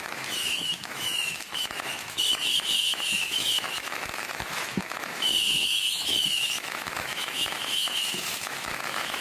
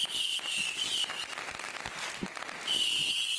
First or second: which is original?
second